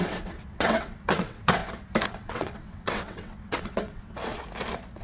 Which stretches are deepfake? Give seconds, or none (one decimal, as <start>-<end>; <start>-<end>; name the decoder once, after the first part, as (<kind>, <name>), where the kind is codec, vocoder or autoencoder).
0.0-1.6 (vocoder, WaveNeXt); 2.1-4.3